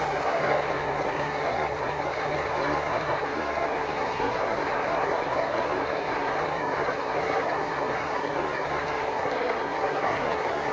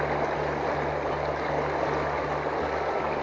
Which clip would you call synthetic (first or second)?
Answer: first